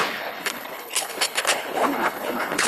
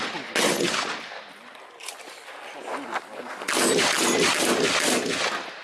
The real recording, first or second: second